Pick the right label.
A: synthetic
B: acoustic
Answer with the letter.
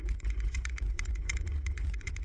A